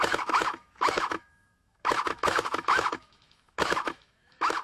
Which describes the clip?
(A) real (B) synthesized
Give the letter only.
B